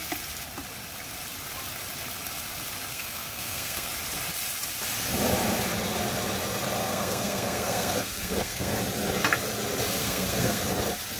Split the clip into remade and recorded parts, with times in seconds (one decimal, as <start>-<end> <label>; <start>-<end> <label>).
0.0-2.9 recorded; 2.9-3.9 remade; 3.9-6.8 recorded; 6.8-8.7 remade; 8.7-10.0 recorded; 10.0-10.6 remade; 10.6-11.2 recorded